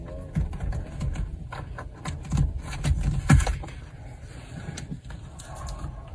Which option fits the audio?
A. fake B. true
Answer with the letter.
B